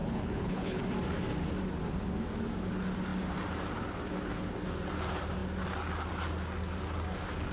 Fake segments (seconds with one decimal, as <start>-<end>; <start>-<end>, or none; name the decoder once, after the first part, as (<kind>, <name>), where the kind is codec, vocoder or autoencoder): 0.0-0.8 (codec, HILCodec)